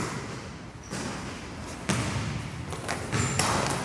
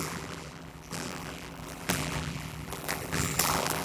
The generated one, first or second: second